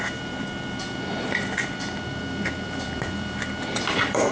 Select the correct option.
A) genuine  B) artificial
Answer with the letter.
B